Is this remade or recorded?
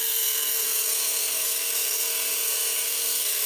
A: remade